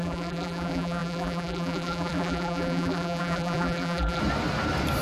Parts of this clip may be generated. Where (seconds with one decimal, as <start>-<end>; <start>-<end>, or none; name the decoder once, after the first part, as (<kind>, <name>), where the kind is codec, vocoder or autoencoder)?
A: 0.0-4.2 (vocoder, BigVGAN v2)